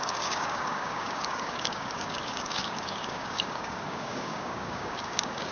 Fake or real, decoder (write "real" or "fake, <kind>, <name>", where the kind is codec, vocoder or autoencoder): fake, codec, DAC